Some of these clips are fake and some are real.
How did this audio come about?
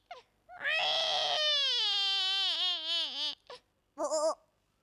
real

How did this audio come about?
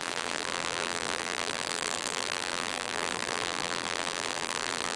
fake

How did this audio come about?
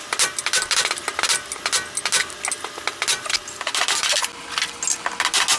real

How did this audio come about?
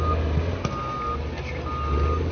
real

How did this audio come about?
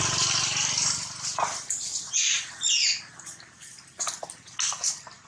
real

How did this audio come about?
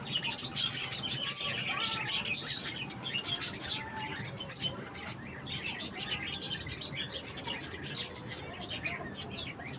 real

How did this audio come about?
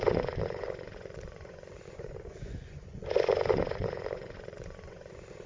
fake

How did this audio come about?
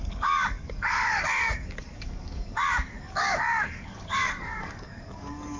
fake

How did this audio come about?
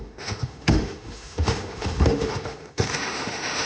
fake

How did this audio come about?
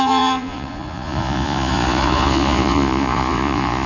fake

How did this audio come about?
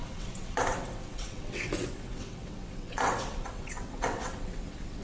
fake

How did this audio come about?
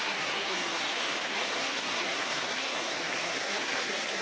fake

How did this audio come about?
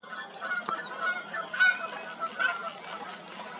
real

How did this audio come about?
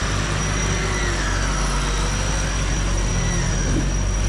real